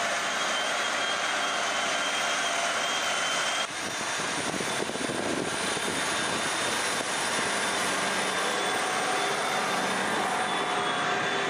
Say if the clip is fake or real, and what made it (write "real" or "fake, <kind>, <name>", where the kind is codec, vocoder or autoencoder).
real